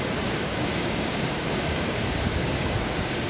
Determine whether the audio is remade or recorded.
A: remade